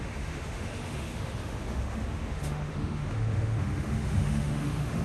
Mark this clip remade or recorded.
remade